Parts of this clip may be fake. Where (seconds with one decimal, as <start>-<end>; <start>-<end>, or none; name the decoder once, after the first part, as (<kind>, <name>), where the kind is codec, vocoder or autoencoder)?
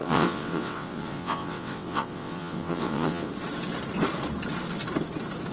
0.0-3.3 (vocoder, WaveNeXt)